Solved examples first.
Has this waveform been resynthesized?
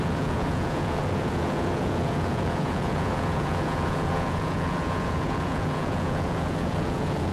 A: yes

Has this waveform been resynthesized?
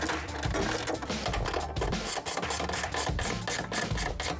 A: no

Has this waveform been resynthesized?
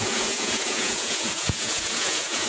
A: yes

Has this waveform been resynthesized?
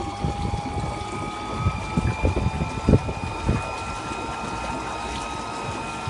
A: no